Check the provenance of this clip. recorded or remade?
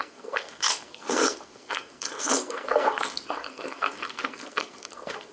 remade